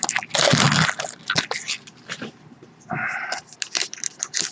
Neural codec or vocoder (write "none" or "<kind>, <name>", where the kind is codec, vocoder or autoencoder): none